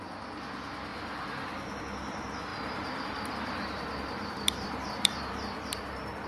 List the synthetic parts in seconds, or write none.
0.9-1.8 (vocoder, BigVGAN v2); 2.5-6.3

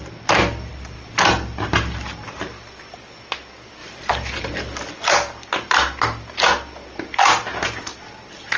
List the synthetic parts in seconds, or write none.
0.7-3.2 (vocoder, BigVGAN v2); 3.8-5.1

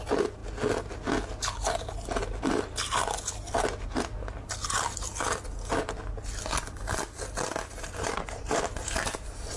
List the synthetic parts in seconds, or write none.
0.0-0.4 (vocoder, BigVGAN v2); 2.4-3.0; 7.8-9.6

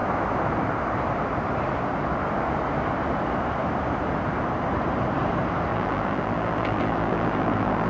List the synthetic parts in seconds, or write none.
5.7-7.9 (vocoder, BigVGAN v2)

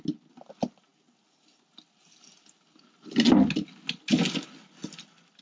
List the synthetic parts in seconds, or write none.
none

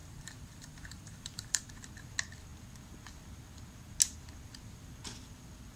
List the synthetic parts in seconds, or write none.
0.0-1.7 (vocoder, BigVGAN v2)